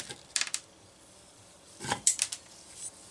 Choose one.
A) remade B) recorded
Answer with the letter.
B